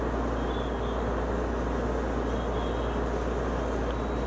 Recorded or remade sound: recorded